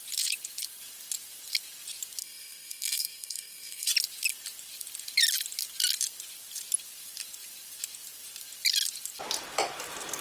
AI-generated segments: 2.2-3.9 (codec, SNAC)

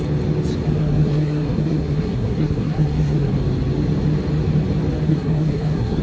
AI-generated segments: 0.8-3.3 (codec, SNAC); 5.1-6.0

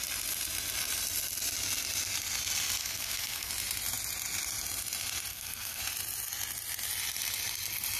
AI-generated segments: 2.8-3.5 (codec, SNAC); 5.3-5.8

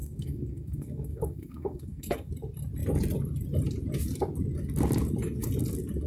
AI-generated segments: 0.0-2.3 (codec, SNAC)

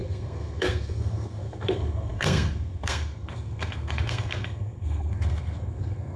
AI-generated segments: 0.0-6.2 (codec, SNAC)